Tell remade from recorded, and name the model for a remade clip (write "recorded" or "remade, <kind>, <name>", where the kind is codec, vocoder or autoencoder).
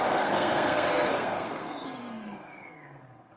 remade, codec, SNAC